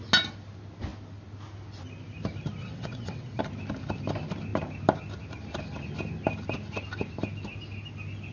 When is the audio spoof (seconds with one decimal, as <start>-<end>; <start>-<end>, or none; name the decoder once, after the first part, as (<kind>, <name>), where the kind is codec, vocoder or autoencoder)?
2.6-3.4 (vocoder, WaveNeXt)